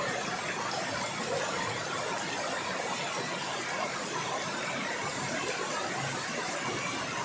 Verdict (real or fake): real